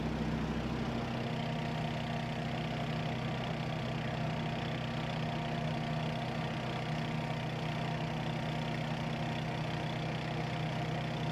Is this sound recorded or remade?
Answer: recorded